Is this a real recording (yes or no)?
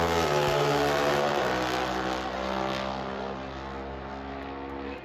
yes